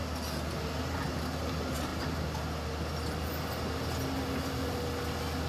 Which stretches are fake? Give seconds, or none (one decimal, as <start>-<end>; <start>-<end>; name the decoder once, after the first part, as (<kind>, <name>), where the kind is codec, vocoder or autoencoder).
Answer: none

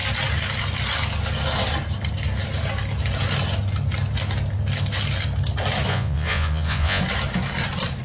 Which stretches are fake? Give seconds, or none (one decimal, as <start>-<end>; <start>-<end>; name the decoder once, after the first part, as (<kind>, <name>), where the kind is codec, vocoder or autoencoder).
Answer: 5.9-7.0 (vocoder, Vocos)